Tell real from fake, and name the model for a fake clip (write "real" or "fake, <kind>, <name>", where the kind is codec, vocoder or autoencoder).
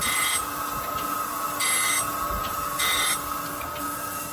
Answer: real